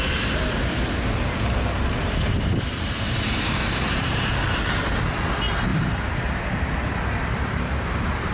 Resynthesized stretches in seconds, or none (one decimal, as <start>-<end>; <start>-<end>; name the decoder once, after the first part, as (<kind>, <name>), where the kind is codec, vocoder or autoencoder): 2.0-4.3 (vocoder, BigVGAN v2); 5.7-6.6